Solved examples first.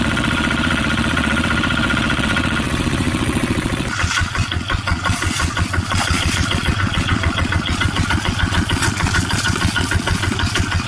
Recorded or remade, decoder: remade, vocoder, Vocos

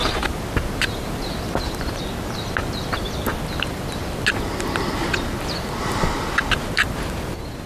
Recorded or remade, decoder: recorded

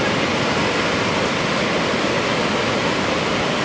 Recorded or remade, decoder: recorded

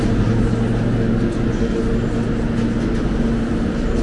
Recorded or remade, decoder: recorded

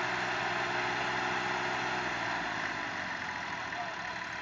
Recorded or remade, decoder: recorded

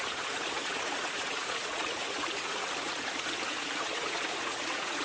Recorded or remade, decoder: remade, vocoder, Vocos